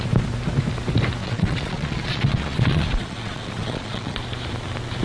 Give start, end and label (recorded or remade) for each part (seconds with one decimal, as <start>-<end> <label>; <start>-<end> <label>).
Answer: 0.0-1.2 recorded; 1.2-4.2 remade; 4.2-5.0 recorded